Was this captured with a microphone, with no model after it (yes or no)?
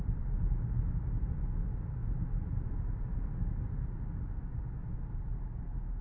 yes